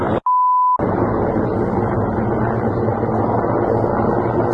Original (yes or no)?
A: yes